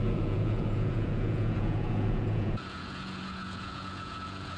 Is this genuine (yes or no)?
no